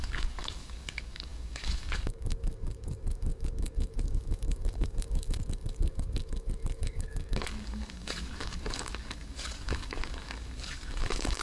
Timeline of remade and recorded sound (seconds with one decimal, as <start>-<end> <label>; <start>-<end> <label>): 0.0-11.4 remade